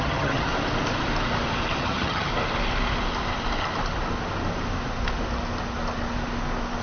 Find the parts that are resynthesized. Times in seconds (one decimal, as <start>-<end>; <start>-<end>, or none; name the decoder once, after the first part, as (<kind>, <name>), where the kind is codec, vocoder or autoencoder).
0.0-0.5 (vocoder, HiFi-GAN); 1.8-2.3